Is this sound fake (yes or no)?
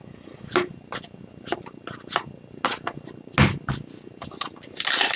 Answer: no